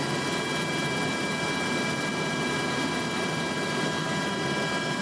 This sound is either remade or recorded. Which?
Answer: recorded